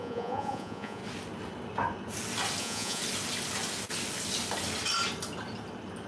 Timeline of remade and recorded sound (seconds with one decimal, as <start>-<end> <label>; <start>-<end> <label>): 0.0-1.0 remade; 1.0-2.6 recorded; 2.6-3.0 remade; 3.0-6.1 recorded